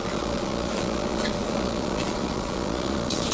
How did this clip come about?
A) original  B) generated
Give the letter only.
B